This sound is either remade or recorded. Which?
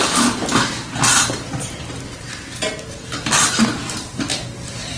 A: recorded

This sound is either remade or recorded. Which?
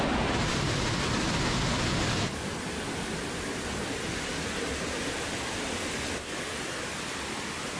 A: recorded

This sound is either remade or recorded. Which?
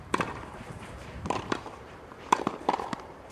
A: remade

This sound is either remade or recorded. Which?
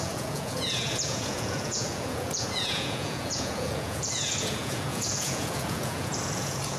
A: remade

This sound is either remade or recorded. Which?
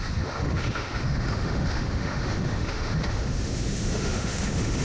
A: remade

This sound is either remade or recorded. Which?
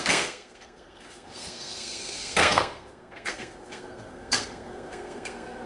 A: remade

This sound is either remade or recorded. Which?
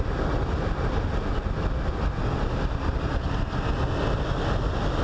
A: recorded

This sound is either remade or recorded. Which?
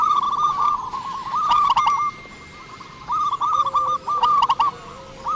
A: recorded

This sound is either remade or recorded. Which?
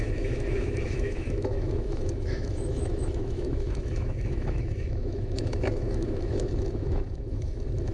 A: remade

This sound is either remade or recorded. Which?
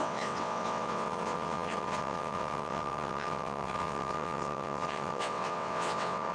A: remade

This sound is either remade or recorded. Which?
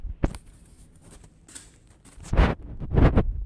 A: recorded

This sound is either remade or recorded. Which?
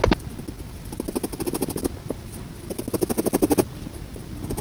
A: recorded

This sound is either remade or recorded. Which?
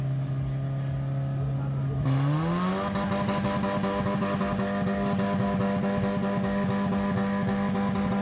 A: recorded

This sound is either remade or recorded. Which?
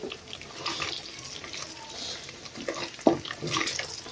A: recorded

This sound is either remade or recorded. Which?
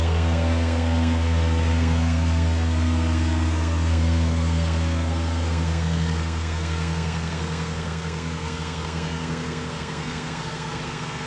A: remade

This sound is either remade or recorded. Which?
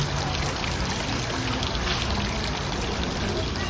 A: recorded